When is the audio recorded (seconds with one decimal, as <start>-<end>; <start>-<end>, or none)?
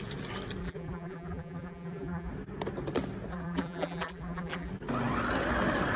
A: 0.0-0.6; 2.3-3.3; 4.7-6.0